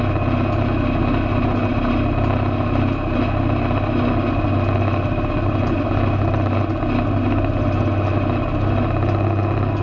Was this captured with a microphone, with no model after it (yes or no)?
yes